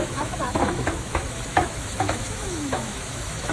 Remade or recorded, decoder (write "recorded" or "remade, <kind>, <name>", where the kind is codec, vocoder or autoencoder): remade, autoencoder, DAC-VAE